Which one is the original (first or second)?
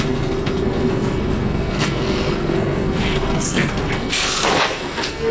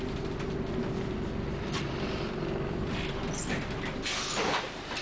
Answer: second